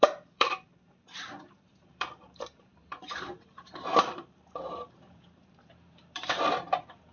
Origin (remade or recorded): remade